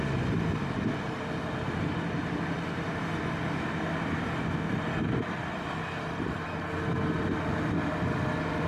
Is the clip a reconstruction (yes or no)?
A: no